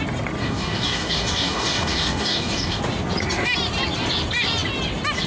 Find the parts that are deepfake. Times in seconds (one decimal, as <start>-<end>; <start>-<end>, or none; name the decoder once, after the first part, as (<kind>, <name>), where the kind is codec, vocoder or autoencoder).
0.4-2.8 (codec, DAC)